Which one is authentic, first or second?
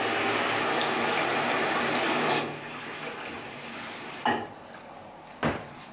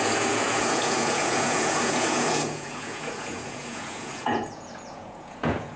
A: first